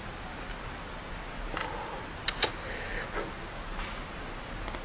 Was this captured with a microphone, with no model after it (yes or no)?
yes